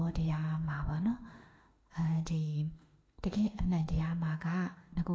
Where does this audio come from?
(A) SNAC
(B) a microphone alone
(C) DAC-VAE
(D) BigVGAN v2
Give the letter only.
C